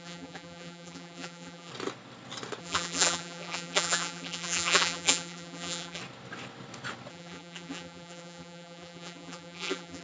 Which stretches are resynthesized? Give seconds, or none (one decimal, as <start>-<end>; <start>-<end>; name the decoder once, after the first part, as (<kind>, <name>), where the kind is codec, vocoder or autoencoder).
0.0-1.7 (vocoder, BigVGAN v2); 2.6-6.0; 7.1-10.0